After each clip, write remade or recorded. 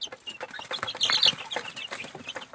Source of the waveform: recorded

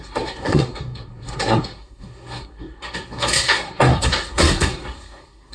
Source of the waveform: remade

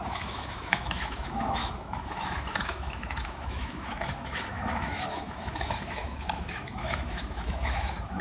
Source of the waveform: remade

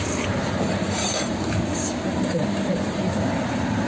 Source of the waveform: remade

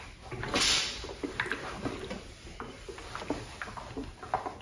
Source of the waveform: recorded